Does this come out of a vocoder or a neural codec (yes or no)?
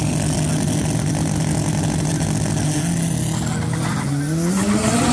no